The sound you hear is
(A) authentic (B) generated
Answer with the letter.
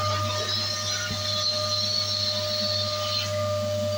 A